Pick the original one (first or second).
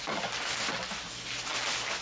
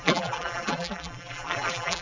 first